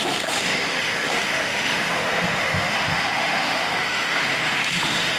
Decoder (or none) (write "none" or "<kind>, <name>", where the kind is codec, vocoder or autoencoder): autoencoder, DAC-VAE